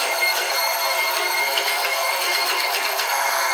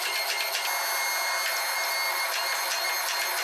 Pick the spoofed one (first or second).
first